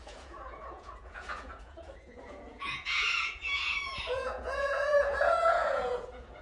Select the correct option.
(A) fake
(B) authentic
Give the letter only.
A